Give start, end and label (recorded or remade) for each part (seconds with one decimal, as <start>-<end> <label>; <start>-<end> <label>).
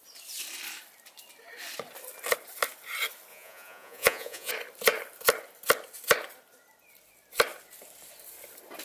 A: 0.0-3.3 recorded; 3.3-4.5 remade; 4.5-8.8 recorded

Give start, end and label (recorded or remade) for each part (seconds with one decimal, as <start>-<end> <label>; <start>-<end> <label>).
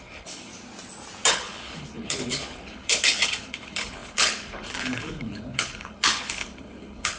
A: 0.0-0.5 remade; 0.5-1.3 recorded; 1.3-7.2 remade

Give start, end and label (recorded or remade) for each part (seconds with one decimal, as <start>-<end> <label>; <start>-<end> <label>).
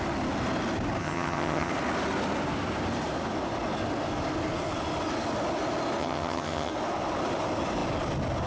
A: 0.0-1.0 recorded; 1.0-1.7 remade; 1.7-6.0 recorded; 6.0-6.7 remade; 6.7-8.5 recorded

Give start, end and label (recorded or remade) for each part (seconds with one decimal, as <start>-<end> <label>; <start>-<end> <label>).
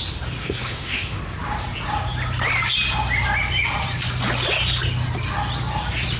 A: 0.0-0.4 recorded; 0.4-1.2 remade; 1.2-6.2 recorded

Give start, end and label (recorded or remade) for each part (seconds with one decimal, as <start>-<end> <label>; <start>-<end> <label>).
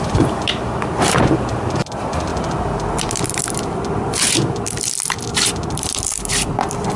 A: 0.0-7.0 remade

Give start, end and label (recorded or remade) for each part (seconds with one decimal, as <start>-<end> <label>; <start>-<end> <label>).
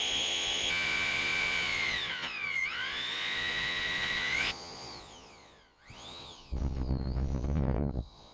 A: 0.0-8.3 remade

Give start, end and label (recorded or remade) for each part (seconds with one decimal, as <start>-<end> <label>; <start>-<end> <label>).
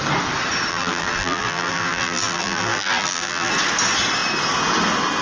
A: 0.0-0.7 recorded; 0.7-3.5 remade; 3.5-5.2 recorded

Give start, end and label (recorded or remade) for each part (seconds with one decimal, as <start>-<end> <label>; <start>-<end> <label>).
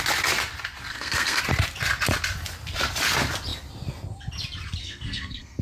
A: 0.0-0.9 recorded; 0.9-1.4 remade; 1.4-4.8 recorded; 4.8-5.6 remade